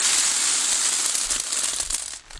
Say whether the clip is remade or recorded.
recorded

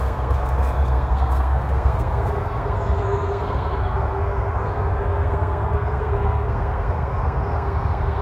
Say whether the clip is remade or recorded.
remade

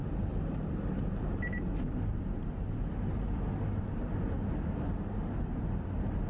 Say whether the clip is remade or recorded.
recorded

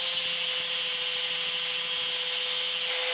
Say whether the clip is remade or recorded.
recorded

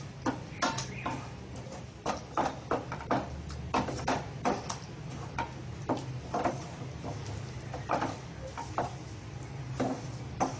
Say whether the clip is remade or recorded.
recorded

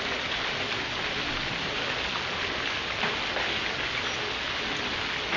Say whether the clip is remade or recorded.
recorded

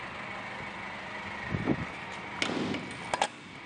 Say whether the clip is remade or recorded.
recorded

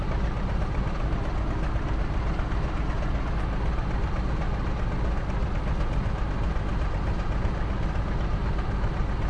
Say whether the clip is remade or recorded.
recorded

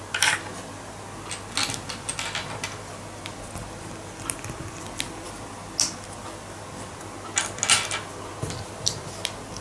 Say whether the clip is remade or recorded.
recorded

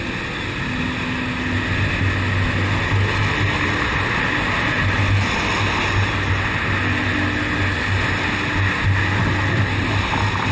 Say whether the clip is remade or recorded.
recorded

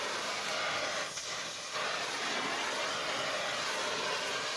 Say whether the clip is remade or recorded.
recorded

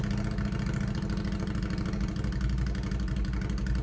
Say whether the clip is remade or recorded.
recorded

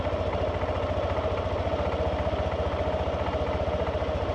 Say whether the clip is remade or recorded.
recorded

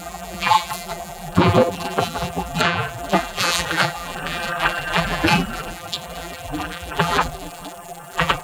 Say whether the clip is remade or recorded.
remade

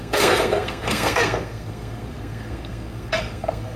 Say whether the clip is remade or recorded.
remade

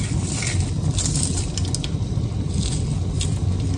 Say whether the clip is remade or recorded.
recorded